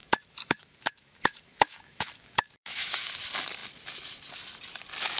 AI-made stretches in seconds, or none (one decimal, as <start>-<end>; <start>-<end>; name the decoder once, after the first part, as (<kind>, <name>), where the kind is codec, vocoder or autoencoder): 0.0-3.1 (autoencoder, DAC-VAE)